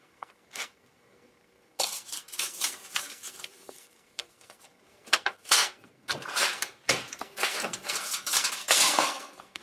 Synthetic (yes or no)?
yes